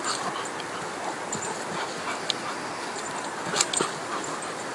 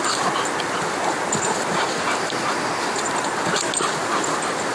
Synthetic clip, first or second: second